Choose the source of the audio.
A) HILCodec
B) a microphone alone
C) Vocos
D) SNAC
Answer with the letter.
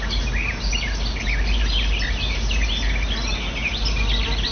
B